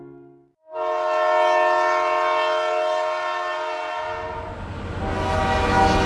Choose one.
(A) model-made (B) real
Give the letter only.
B